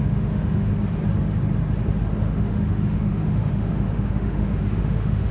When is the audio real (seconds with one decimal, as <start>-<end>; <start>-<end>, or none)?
0.7-2.2